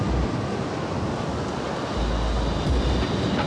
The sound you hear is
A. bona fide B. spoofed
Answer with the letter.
A